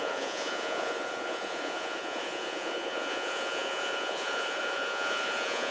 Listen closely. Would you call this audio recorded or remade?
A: remade